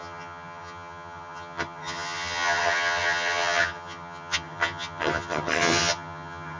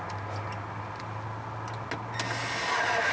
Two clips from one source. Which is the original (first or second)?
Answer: second